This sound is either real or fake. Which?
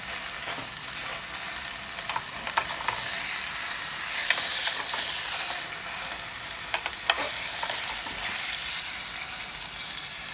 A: real